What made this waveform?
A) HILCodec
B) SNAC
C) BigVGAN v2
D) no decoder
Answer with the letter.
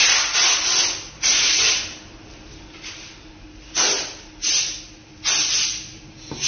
D